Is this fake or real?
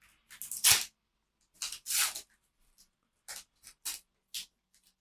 real